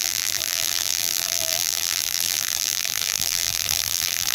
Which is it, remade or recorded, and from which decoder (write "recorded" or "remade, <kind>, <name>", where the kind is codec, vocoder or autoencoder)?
remade, vocoder, BigVGAN v2